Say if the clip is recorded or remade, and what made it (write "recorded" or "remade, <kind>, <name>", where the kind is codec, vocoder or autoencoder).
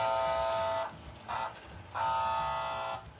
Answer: recorded